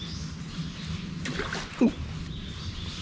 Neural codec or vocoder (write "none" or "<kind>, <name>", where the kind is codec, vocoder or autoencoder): none